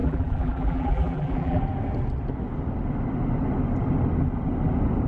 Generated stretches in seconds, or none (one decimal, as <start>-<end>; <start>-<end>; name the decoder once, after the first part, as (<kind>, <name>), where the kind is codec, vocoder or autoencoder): 0.0-1.6 (vocoder, BigVGAN v2)